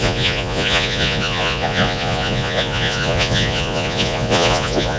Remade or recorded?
remade